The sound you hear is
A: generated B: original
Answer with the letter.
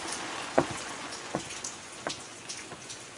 A